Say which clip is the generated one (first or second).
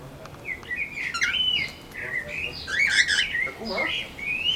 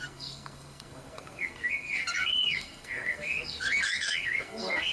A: second